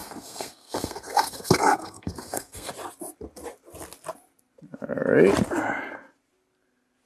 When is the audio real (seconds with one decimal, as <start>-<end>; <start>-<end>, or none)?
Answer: 2.7-7.1